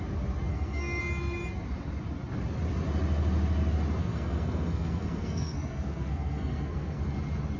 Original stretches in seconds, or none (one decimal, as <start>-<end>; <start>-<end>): 0.0-0.5; 1.0-4.0; 7.0-7.6